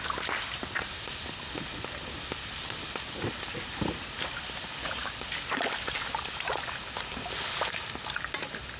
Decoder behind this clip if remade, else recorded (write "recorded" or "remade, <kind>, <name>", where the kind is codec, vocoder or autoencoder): recorded